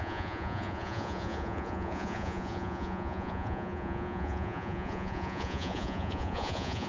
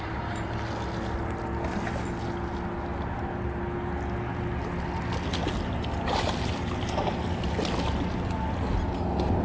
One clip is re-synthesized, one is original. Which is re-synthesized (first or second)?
first